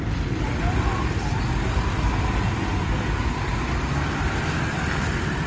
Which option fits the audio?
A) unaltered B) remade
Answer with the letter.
A